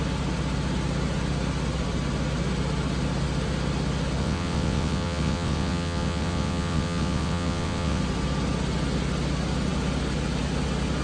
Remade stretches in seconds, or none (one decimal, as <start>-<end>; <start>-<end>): 4.2-8.0